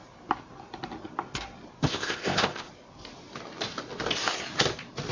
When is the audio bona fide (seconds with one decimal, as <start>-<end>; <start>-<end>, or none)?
0.0-1.8; 2.7-5.1